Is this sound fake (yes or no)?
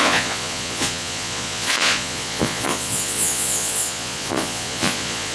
yes